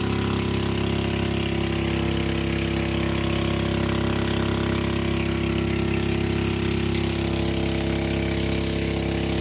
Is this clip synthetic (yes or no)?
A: no